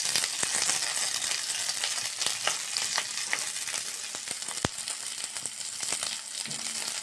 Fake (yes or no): no